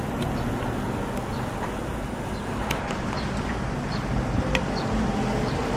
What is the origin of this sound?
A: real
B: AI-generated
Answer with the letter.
A